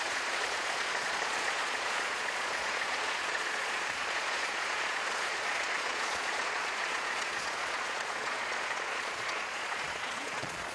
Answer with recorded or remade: remade